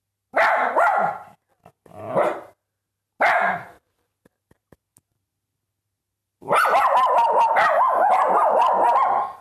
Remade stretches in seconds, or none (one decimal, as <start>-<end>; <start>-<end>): 6.2-7.7